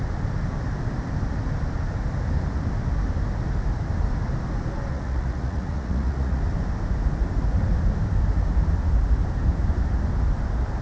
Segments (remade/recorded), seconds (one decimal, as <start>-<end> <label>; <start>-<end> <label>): 0.0-4.9 recorded; 4.9-6.4 remade; 6.4-10.8 recorded